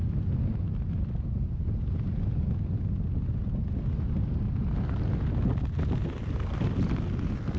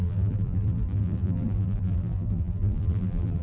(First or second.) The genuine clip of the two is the first